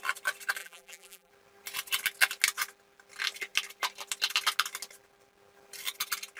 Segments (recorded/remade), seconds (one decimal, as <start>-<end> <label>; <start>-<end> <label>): 0.0-0.6 recorded; 0.6-1.3 remade; 1.3-6.4 recorded